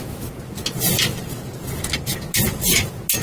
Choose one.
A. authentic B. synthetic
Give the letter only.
A